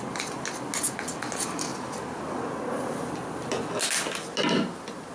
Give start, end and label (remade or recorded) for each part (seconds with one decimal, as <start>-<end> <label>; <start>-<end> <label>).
0.0-5.1 recorded